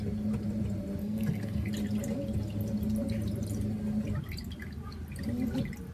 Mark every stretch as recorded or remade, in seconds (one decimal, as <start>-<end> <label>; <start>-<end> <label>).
0.0-1.0 recorded; 1.0-1.7 remade; 1.7-5.9 recorded